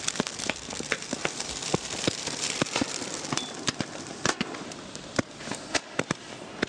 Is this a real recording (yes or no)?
no